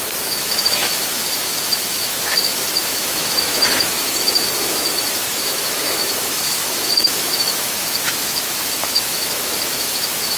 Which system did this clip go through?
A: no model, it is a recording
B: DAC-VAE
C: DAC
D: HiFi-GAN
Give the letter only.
B